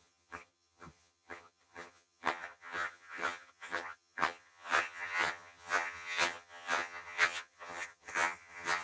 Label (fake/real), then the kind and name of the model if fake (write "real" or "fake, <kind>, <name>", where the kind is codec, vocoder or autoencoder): fake, vocoder, HiFi-GAN